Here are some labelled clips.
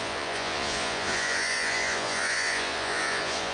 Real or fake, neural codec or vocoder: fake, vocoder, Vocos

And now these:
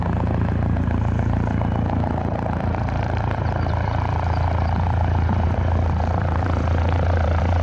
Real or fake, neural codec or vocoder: fake, vocoder, BigVGAN v2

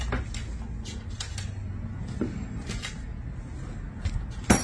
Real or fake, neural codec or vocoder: real